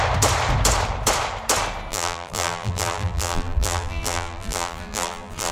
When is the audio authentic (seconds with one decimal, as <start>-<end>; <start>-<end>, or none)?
0.0-1.9